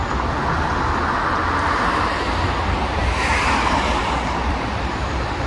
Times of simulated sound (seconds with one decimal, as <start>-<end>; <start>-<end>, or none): 1.4-5.5